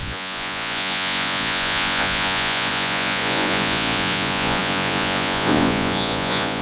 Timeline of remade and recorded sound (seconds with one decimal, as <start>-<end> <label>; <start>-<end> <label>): 0.0-6.6 remade